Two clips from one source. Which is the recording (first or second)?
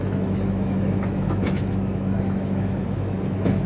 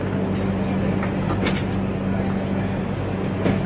second